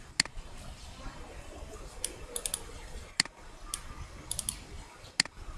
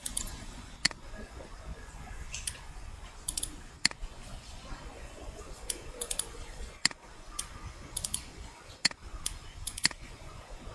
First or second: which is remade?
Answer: second